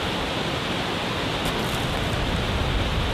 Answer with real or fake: real